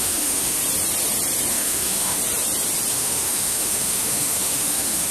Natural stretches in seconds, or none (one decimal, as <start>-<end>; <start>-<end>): 0.6-1.5; 2.2-2.9